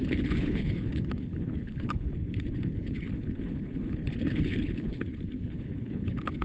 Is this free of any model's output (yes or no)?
no